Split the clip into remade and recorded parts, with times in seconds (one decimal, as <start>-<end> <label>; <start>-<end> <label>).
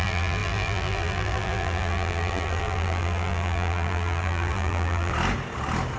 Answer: 0.0-5.1 remade; 5.1-6.0 recorded